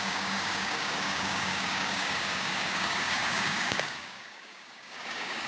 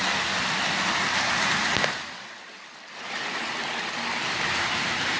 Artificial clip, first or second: first